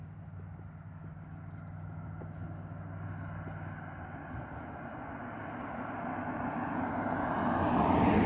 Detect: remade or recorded recorded